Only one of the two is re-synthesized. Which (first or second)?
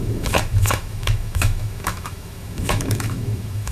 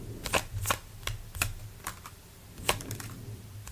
first